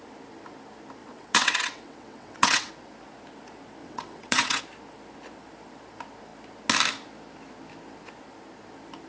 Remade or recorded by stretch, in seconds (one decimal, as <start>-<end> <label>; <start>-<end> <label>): 0.0-1.0 recorded; 1.0-2.7 remade; 2.7-3.8 recorded; 3.8-4.6 remade; 4.6-9.1 recorded